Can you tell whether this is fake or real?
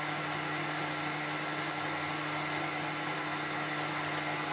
real